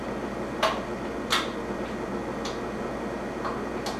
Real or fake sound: real